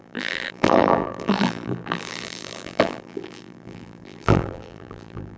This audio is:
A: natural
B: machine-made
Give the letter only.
B